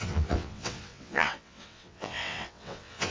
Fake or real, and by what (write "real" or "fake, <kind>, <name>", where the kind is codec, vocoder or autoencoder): fake, vocoder, WaveNeXt